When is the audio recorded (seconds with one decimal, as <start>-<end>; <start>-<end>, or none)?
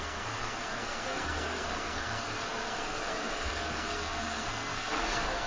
none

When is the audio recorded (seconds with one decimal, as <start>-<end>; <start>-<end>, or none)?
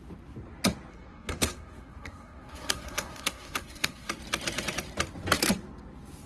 0.0-0.9; 4.1-6.3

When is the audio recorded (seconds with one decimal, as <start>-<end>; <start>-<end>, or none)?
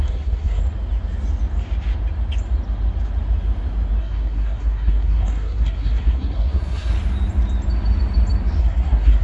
0.6-4.0; 6.9-8.6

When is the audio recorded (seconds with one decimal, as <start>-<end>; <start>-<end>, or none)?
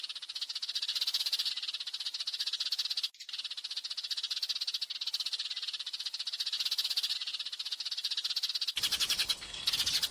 0.0-9.2; 9.7-10.1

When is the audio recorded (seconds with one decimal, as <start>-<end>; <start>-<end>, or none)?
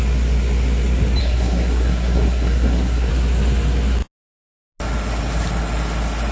0.0-1.2; 3.1-6.3